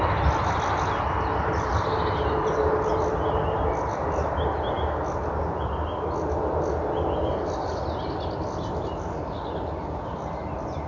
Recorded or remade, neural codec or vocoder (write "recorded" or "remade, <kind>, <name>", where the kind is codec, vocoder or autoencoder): recorded